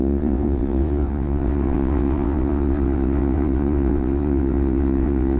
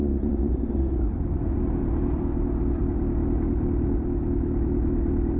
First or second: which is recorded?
second